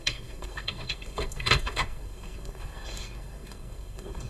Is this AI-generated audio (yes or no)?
yes